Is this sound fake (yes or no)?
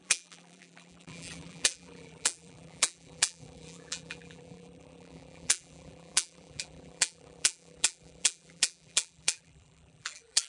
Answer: yes